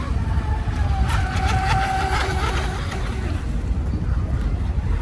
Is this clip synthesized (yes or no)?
no